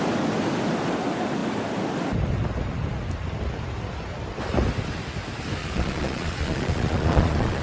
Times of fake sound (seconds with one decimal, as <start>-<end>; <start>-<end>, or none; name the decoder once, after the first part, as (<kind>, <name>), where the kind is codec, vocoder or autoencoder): 5.6-7.6 (vocoder, Vocos)